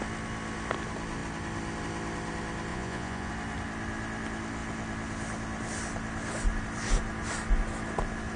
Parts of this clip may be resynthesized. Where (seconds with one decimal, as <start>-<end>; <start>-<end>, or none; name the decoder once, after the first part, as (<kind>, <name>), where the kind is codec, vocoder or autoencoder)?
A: 2.7-3.3 (vocoder, Vocos)